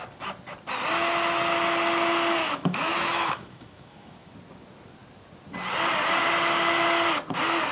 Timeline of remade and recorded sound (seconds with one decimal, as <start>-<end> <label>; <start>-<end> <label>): 0.0-2.4 recorded; 2.4-4.3 remade; 4.3-7.7 recorded